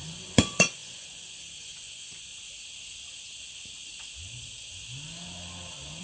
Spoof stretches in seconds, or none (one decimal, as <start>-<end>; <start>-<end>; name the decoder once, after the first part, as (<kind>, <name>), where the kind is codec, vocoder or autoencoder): 0.0-2.3 (vocoder, Vocos)